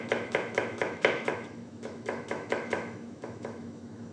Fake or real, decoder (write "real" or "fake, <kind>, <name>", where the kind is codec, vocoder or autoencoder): fake, autoencoder, DAC-VAE